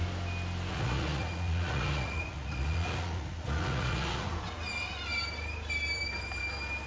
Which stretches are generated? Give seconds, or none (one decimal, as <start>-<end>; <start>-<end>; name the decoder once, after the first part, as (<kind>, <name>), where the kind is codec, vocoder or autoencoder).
0.7-4.3 (vocoder, Vocos)